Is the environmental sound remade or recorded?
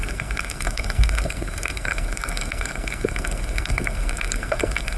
remade